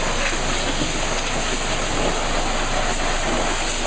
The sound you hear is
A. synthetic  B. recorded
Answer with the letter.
B